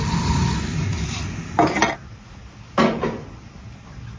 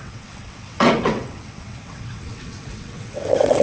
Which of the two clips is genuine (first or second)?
first